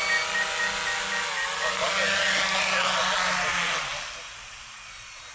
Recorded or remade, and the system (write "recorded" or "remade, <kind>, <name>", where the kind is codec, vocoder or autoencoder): recorded